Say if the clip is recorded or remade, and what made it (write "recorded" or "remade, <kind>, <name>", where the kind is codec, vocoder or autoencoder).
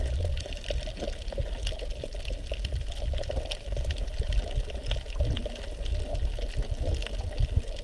recorded